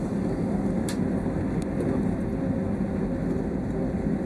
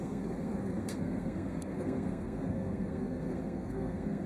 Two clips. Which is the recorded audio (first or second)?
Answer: first